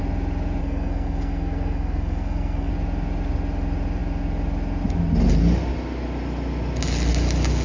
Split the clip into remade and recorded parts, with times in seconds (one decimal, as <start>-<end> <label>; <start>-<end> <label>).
0.0-0.6 recorded; 0.6-2.7 remade; 2.7-7.6 recorded